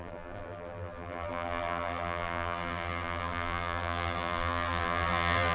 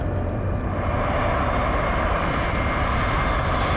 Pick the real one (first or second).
second